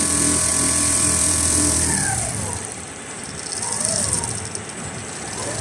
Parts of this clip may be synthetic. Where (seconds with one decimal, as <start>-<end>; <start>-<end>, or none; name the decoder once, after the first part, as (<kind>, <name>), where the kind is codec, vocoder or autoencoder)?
0.5-3.3 (vocoder, BigVGAN v2)